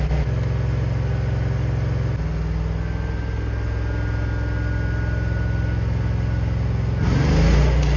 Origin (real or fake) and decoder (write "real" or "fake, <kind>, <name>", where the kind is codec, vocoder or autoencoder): real